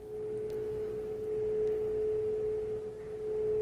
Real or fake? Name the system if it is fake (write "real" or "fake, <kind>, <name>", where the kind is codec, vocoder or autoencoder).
real